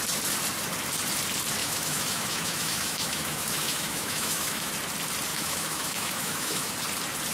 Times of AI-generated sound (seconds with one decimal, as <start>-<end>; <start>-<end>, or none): 1.6-4.7; 5.3-6.7